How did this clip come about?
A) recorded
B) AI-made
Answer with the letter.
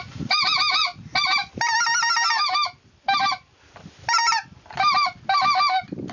A